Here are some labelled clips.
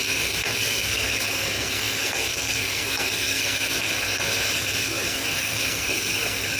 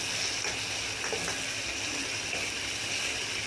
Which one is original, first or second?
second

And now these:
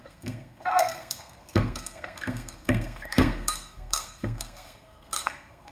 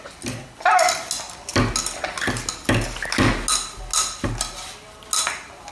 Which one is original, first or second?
second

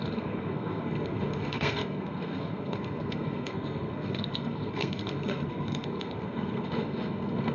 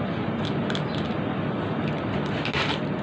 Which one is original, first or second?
second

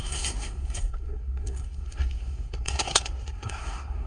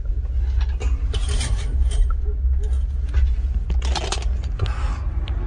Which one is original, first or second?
second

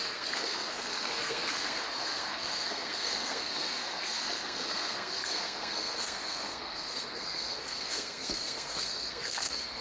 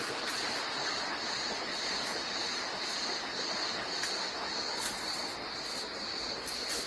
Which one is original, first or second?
second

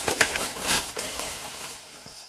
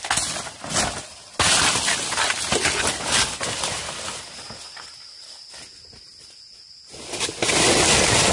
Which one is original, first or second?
second